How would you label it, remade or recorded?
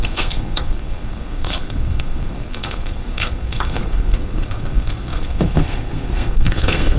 remade